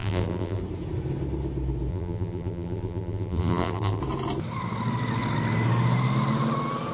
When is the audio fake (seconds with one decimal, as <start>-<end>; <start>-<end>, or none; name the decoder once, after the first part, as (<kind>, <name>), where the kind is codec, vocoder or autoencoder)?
0.0-0.6 (vocoder, BigVGAN v2); 1.9-4.0